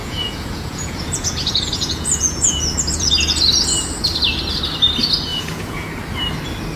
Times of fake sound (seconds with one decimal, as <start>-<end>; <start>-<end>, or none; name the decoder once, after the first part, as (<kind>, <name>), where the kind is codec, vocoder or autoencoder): 0.0-3.1 (vocoder, Vocos); 5.3-5.9